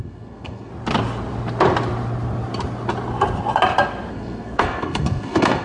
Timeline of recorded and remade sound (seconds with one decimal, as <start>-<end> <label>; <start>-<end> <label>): 0.0-0.7 remade; 0.7-4.1 recorded; 4.1-5.6 remade